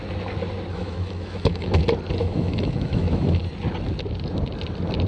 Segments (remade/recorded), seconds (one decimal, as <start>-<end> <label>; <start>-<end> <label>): 0.0-0.7 recorded; 0.7-1.8 remade; 1.8-2.2 recorded; 2.2-3.4 remade; 3.4-5.1 recorded